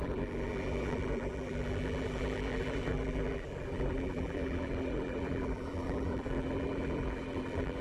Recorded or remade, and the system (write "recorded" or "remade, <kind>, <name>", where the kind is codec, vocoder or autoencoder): remade, vocoder, BigVGAN v2